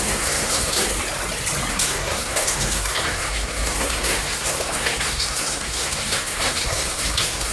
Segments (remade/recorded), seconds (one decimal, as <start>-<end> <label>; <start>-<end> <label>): 0.0-0.9 remade; 0.9-1.7 recorded; 1.7-7.5 remade